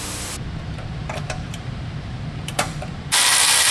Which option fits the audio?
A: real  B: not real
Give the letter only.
B